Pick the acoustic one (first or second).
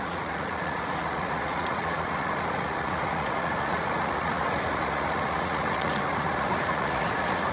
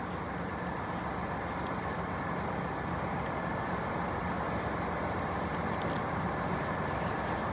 second